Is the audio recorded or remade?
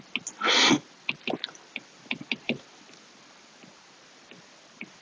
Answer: recorded